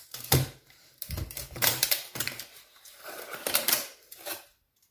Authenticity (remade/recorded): remade